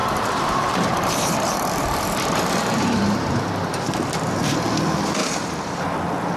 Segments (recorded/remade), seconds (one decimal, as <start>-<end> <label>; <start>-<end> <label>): 0.0-3.3 remade; 3.3-5.2 recorded; 5.2-5.8 remade; 5.8-6.4 recorded